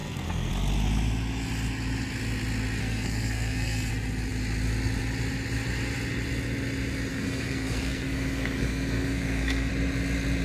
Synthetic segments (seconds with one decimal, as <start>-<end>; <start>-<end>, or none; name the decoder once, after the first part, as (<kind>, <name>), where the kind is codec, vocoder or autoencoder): 0.0-0.5 (codec, SNAC); 2.8-3.9; 7.1-9.7